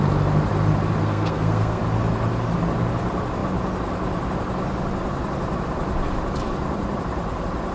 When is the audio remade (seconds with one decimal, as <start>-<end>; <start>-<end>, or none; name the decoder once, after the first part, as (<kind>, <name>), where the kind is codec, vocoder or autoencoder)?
1.0-1.8 (codec, SNAC)